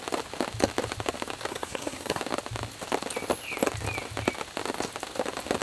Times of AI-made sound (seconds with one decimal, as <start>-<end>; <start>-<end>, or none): 1.5-2.2